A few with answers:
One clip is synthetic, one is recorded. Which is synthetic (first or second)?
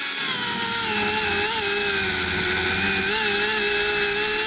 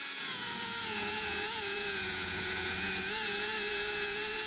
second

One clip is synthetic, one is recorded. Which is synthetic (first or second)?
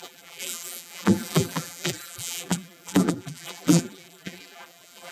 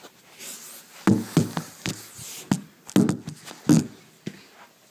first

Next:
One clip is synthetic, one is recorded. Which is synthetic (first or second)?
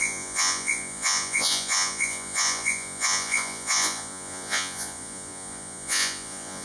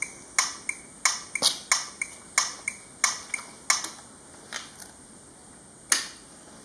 first